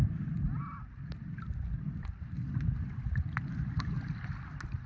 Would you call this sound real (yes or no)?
yes